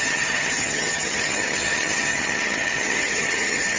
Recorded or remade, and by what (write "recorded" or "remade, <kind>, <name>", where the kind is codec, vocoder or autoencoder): remade, vocoder, HiFi-GAN